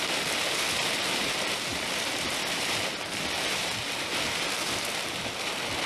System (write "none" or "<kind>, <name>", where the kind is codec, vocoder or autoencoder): none